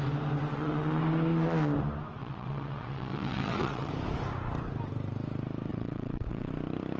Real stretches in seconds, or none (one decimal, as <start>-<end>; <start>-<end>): 0.0-0.5; 1.0-2.2; 3.9-5.7; 6.5-7.0

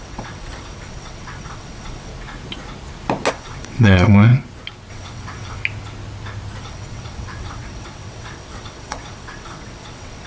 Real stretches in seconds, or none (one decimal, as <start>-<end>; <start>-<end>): 2.1-3.3; 4.3-4.9; 5.6-6.6

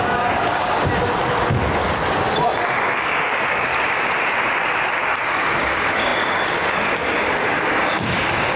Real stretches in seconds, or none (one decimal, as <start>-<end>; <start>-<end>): 0.9-2.8; 3.7-5.3